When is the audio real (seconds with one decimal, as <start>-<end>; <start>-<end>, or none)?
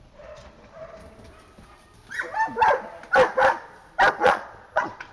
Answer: 1.0-4.1